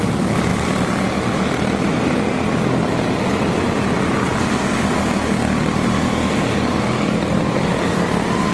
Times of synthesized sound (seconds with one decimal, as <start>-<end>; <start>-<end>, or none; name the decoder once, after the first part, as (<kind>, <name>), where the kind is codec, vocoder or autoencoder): none